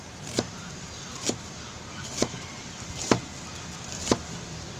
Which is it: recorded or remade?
remade